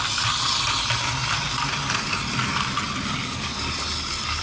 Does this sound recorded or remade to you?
recorded